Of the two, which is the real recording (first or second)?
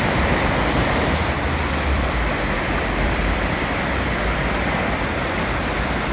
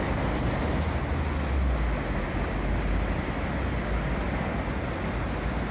second